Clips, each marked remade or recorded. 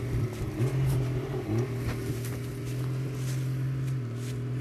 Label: recorded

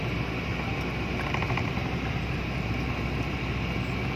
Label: recorded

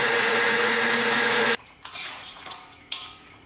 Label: remade